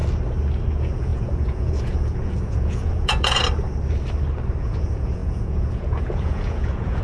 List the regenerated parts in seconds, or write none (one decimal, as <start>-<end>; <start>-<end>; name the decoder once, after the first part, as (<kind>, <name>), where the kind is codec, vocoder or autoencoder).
0.7-3.4 (vocoder, Vocos); 4.6-7.0